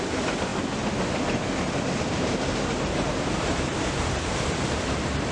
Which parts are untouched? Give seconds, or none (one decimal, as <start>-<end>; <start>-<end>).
0.5-2.0